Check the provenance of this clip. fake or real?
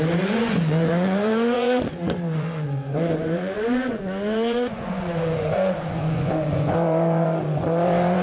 fake